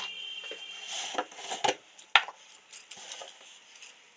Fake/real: real